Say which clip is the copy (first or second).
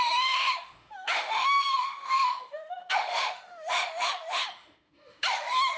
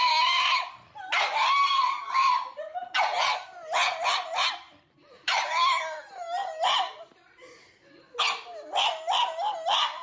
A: first